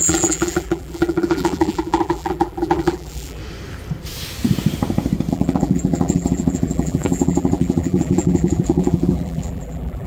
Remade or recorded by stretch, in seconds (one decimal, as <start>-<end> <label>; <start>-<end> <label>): 0.0-3.4 remade; 3.4-5.3 recorded; 5.3-10.1 remade